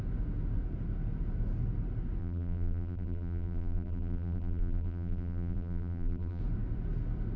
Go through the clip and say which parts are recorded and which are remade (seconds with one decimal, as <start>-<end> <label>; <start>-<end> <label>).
0.0-2.2 recorded; 2.2-6.4 remade; 6.4-7.4 recorded